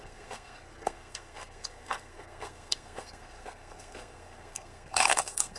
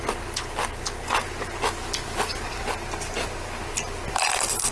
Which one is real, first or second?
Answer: second